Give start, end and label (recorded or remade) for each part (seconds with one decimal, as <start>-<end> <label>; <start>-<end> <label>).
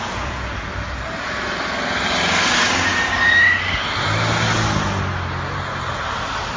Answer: 0.0-0.7 remade; 0.7-6.6 recorded